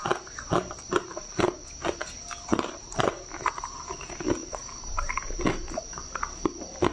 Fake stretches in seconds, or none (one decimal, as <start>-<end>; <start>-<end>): 0.0-1.0; 2.5-3.1; 4.4-5.4

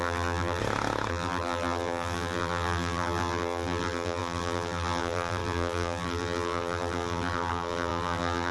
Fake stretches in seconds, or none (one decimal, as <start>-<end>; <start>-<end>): 0.0-0.6; 1.1-8.5

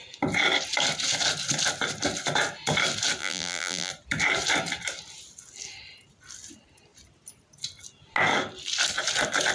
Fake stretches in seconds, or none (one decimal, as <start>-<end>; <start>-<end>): 3.2-3.9

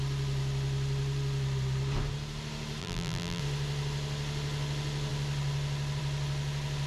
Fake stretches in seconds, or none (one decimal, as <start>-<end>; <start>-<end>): 2.8-3.4

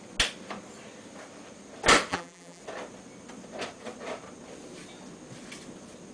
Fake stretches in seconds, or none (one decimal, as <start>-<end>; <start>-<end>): 2.1-2.6

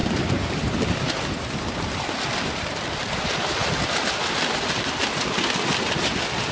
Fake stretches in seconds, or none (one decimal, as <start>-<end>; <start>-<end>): 0.0-1.3

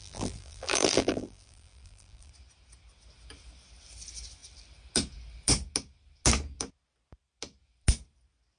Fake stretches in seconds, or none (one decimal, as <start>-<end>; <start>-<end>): 0.0-2.3

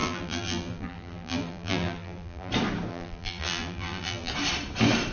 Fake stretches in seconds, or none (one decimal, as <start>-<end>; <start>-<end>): 0.0-2.5; 2.9-4.3